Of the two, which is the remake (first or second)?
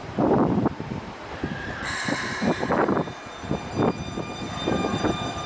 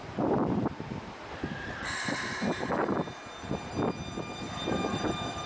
first